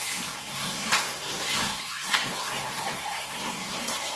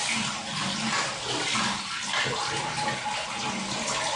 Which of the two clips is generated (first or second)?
first